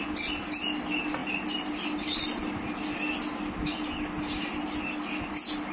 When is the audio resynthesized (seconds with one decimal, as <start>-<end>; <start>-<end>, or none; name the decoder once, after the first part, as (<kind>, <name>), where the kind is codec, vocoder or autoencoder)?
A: none